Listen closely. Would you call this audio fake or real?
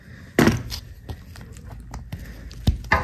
real